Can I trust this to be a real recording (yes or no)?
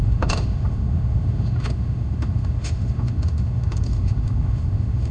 no